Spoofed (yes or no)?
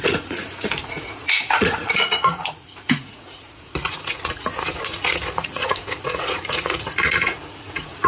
yes